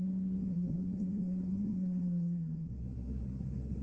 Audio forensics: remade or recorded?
remade